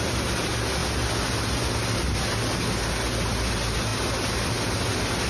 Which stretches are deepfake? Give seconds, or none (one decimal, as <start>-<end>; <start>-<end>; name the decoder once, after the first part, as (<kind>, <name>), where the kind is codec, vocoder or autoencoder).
none